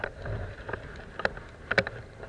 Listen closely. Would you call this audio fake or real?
real